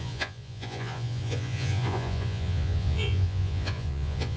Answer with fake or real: fake